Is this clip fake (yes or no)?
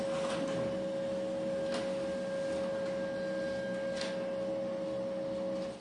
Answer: no